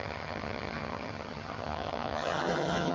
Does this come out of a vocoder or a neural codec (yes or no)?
yes